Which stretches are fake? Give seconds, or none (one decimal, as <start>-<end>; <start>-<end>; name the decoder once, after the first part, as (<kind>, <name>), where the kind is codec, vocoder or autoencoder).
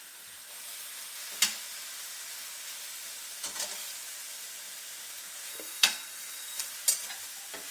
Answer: 5.5-6.7 (codec, SNAC)